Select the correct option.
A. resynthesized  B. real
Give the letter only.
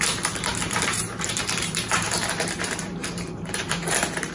A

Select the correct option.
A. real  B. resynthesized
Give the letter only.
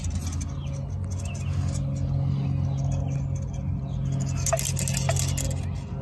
A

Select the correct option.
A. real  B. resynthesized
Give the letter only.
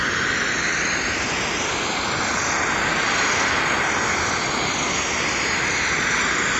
A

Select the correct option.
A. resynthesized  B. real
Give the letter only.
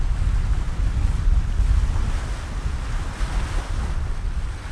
B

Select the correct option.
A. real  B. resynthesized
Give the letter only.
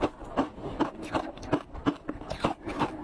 A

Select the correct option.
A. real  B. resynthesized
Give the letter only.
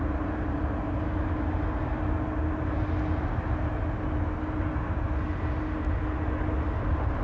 A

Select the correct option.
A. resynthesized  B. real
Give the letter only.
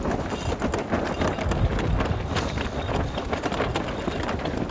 B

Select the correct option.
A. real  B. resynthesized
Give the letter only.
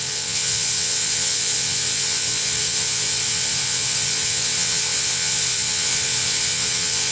B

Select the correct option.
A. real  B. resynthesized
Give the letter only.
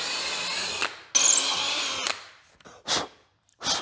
A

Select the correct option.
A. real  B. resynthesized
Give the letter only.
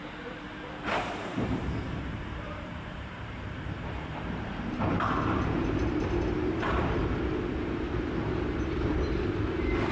B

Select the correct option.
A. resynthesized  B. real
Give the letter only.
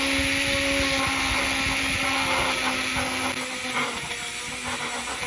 B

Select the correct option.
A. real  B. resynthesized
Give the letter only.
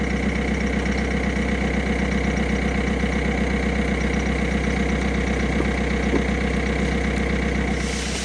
A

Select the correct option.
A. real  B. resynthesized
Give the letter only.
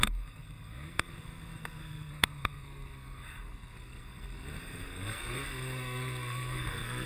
B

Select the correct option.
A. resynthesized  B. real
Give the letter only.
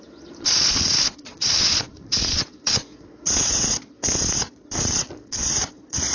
A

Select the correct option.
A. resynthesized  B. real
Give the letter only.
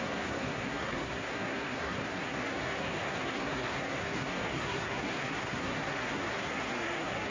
A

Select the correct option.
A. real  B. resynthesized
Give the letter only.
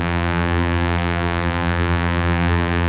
B